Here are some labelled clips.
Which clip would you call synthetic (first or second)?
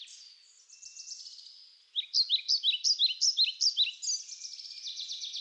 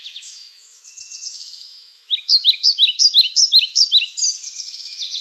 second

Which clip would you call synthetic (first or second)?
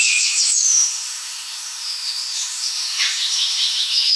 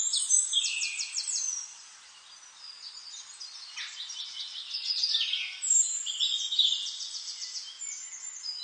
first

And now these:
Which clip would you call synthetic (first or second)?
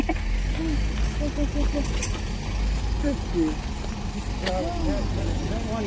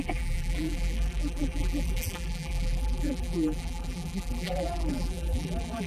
second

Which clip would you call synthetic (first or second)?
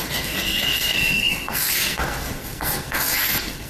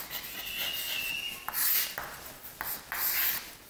first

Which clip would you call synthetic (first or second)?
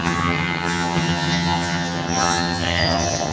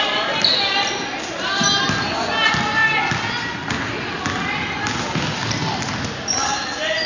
first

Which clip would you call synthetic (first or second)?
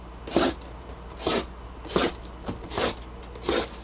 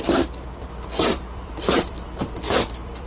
second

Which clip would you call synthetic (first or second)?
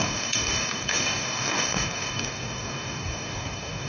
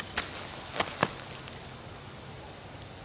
first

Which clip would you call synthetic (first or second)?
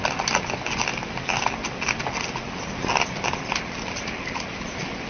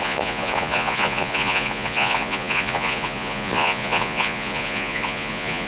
second